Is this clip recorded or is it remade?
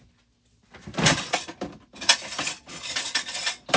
recorded